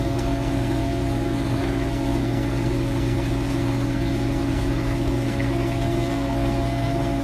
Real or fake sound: fake